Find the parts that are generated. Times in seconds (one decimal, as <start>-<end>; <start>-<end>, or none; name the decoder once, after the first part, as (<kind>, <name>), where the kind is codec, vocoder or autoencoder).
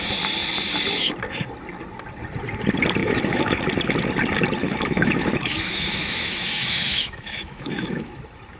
3.0-3.6 (autoencoder, DAC-VAE); 4.6-8.2